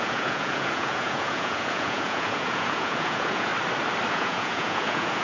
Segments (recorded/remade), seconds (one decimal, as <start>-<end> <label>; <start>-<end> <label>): 0.0-3.5 remade; 3.5-4.1 recorded; 4.1-5.2 remade